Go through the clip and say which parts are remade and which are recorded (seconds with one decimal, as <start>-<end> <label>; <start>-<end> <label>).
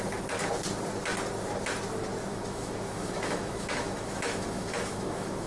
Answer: 0.0-2.3 recorded; 2.3-5.5 remade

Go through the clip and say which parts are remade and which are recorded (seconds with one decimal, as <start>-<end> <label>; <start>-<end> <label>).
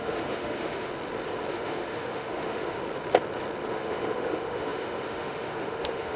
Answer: 0.0-0.9 remade; 0.9-1.5 recorded; 1.5-2.8 remade; 2.8-3.7 recorded; 3.7-6.2 remade